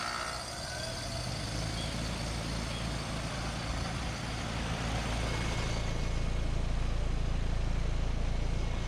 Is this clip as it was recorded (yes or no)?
yes